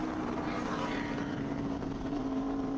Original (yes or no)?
no